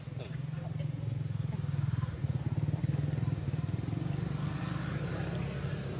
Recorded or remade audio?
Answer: recorded